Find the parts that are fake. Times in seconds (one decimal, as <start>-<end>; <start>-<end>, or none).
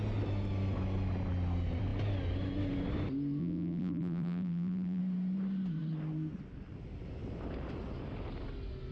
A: 3.4-5.0